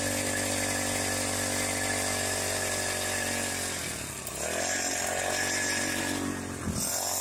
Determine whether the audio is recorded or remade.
recorded